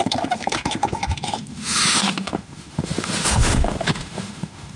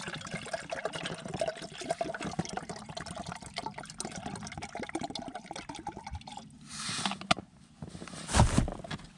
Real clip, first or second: second